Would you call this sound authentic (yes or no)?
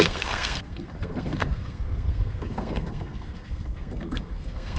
no